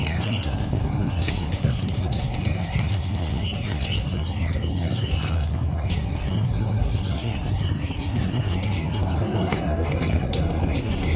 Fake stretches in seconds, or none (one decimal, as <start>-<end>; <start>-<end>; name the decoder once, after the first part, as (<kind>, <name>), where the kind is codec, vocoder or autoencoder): 0.0-11.2 (codec, SNAC)